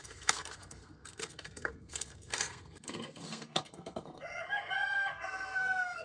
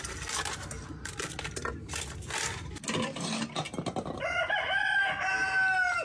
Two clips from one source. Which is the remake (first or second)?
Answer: first